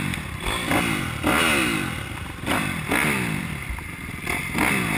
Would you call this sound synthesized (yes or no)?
no